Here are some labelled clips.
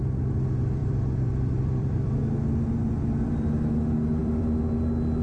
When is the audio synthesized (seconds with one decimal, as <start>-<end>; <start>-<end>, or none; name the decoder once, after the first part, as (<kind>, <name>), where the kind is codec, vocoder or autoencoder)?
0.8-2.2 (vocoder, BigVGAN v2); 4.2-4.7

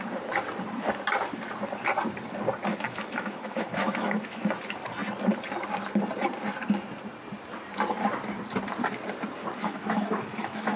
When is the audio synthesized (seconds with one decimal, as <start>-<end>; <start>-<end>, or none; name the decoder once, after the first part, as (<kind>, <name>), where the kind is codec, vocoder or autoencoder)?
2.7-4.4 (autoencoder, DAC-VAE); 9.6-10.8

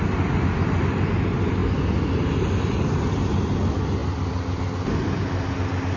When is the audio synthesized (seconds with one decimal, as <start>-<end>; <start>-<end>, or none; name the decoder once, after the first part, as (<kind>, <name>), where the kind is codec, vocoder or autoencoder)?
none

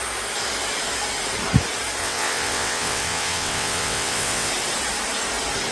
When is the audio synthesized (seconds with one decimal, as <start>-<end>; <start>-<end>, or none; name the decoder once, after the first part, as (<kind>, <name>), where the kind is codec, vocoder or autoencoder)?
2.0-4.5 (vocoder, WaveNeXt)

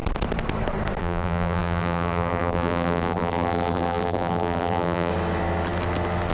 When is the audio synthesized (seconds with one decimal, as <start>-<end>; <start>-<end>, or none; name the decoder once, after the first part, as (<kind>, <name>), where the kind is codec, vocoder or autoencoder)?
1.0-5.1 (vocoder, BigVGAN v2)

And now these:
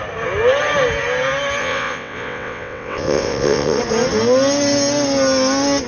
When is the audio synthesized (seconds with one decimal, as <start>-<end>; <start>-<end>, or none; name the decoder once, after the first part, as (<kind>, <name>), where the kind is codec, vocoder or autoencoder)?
1.6-3.8 (vocoder, WaveNeXt)

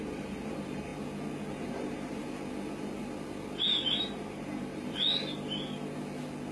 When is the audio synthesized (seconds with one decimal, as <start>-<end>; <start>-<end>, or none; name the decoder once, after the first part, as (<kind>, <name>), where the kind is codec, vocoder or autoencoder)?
0.0-0.9 (vocoder, BigVGAN v2); 1.5-2.2; 4.0-5.0

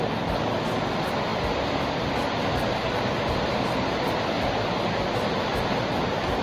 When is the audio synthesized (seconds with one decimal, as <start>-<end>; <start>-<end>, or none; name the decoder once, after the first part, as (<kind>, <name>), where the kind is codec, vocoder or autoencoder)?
none